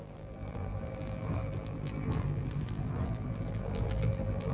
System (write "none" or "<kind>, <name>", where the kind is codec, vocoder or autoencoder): vocoder, BigVGAN v2